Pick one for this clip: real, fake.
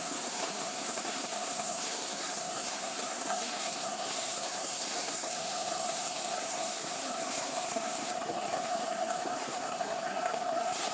fake